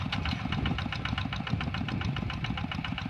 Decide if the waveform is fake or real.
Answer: real